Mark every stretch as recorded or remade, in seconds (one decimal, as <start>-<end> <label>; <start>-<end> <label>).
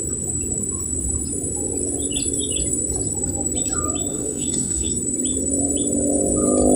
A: 0.0-4.1 recorded; 4.1-4.9 remade; 4.9-6.8 recorded